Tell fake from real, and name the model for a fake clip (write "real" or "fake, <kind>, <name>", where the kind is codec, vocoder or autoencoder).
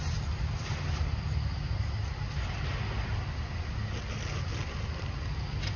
real